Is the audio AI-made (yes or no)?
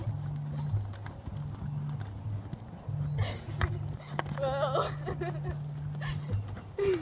no